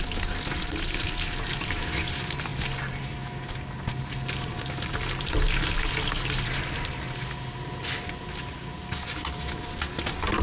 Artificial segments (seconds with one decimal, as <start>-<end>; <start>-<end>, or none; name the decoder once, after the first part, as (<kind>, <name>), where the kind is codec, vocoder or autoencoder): none